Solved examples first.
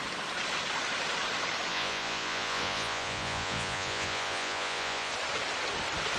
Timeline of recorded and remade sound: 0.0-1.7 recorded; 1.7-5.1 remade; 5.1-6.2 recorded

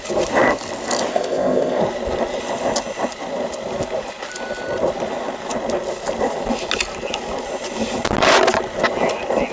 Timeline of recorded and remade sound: 0.0-1.1 recorded; 1.1-1.8 remade; 1.8-9.5 recorded

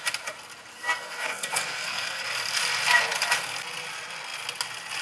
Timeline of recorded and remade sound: 0.0-0.7 recorded; 0.7-2.2 remade; 2.2-5.0 recorded